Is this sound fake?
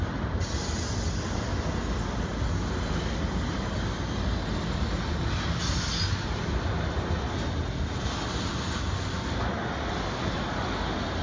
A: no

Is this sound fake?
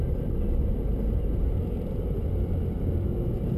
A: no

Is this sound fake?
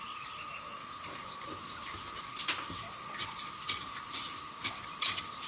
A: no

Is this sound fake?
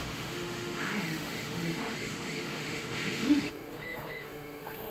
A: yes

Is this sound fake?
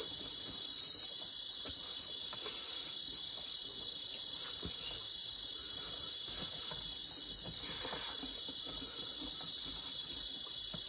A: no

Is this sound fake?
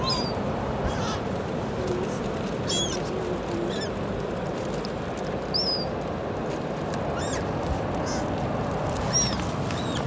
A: no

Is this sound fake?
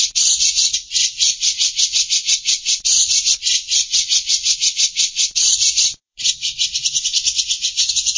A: yes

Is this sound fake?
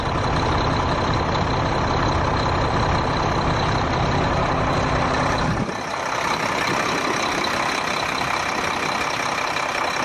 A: yes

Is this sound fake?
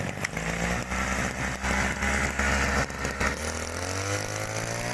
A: no